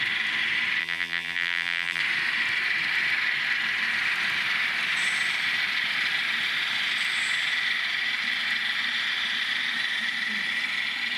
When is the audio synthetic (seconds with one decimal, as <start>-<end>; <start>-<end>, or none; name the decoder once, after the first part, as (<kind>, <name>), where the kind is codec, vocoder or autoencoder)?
0.8-2.0 (vocoder, BigVGAN v2)